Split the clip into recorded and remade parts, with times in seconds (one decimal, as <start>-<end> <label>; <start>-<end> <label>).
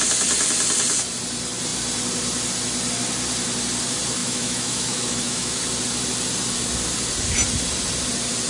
0.0-4.2 recorded; 4.2-5.6 remade; 5.6-8.5 recorded